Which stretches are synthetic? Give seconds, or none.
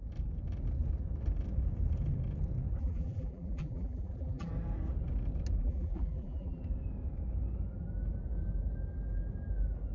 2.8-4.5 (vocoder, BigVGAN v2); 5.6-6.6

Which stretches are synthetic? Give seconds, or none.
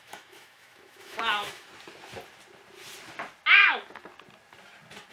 0.0-1.7 (autoencoder, DAC-VAE)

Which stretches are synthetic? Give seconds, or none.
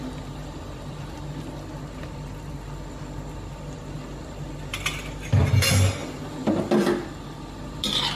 none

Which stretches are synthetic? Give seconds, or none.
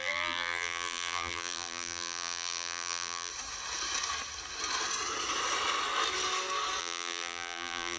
0.0-3.3 (vocoder, BigVGAN v2); 6.8-8.0